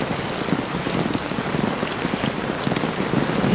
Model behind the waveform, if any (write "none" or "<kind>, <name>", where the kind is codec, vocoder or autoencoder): none